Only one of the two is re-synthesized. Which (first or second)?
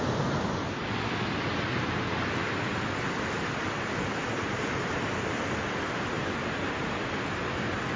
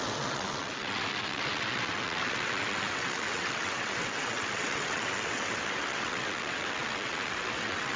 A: second